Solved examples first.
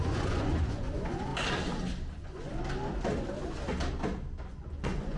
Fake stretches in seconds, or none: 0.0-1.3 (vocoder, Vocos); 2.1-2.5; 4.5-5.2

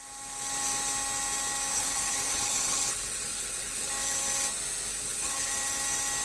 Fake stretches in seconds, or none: 1.7-3.9 (codec, HILCodec); 4.9-5.5

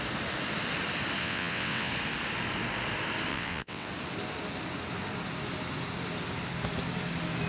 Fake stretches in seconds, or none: 1.2-1.9 (vocoder, WaveNeXt); 3.3-3.9

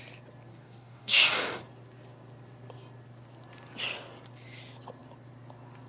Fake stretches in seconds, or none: 0.5-1.6 (codec, DAC)

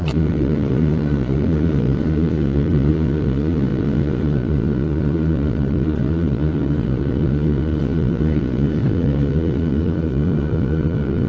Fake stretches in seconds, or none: 0.0-11.3 (vocoder, Vocos)

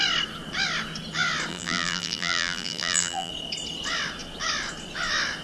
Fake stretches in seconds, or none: 1.5-3.3 (vocoder, BigVGAN v2)

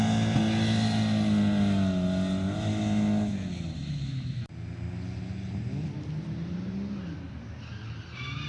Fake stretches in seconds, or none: none